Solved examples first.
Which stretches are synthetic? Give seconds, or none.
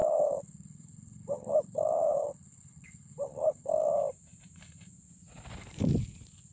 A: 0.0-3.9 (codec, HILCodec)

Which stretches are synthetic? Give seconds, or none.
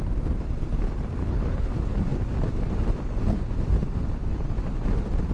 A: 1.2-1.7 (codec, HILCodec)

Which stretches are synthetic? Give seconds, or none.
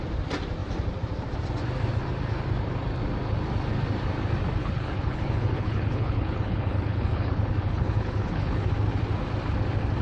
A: 4.6-8.7 (codec, HILCodec)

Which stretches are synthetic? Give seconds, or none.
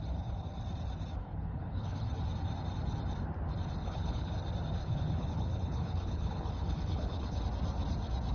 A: 1.2-2.1 (codec, HILCodec); 3.8-4.3; 4.8-7.4